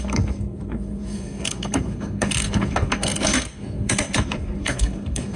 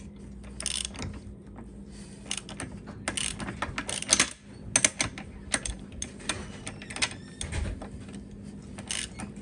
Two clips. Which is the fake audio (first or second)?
first